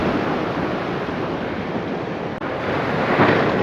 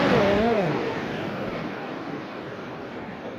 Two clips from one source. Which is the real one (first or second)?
first